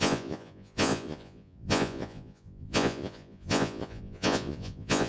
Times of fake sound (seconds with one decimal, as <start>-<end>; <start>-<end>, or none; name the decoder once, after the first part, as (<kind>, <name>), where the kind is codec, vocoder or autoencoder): 0.0-5.1 (vocoder, Vocos)